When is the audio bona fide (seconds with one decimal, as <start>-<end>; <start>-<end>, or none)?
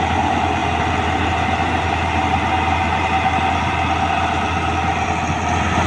0.0-5.9